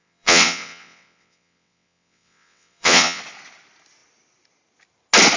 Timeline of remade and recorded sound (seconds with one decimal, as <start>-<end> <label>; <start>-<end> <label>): 0.0-3.2 remade; 3.2-5.4 recorded